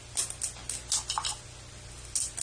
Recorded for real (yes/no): yes